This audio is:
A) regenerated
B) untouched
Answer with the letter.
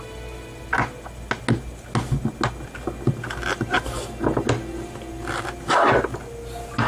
B